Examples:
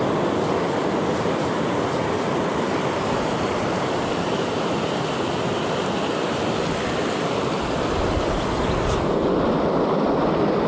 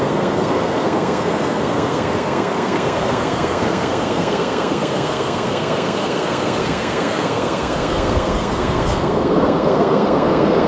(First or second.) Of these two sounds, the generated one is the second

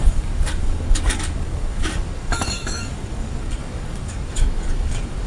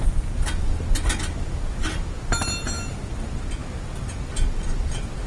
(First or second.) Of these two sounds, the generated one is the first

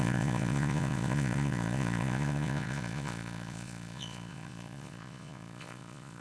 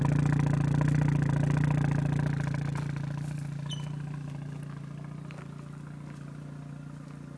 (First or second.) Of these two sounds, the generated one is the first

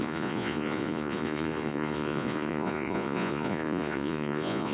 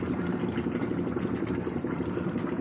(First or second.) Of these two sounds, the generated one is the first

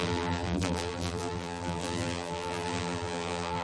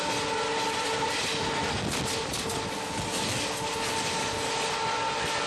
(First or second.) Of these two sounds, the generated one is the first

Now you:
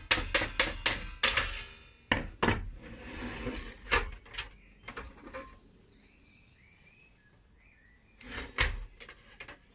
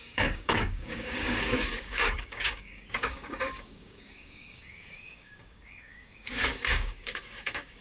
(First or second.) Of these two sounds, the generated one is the second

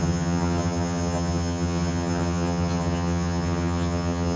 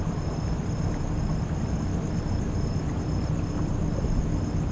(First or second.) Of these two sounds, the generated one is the first